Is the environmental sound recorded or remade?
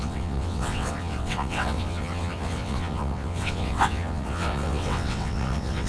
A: remade